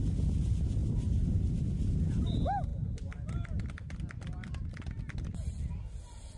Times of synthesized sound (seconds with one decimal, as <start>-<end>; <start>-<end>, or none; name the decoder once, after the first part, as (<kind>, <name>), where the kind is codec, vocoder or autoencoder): none